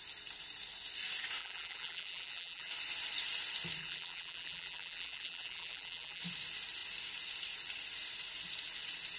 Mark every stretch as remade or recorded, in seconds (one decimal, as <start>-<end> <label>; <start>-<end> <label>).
0.0-1.4 recorded; 1.4-2.7 remade; 2.7-3.8 recorded; 3.8-6.2 remade; 6.2-9.2 recorded